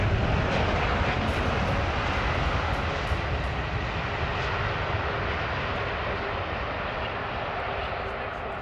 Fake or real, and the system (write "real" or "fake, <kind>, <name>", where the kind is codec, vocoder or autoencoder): real